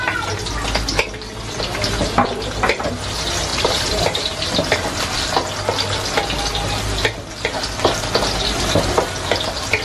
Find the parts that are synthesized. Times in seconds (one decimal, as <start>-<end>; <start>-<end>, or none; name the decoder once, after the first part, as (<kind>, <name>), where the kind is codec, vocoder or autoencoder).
3.5-4.6 (vocoder, BigVGAN v2)